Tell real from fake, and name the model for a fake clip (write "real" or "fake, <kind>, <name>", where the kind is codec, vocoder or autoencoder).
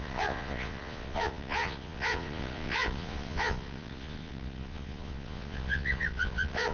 fake, vocoder, Vocos